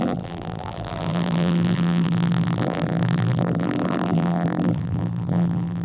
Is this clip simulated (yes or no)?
yes